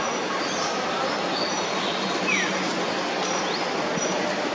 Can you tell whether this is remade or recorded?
recorded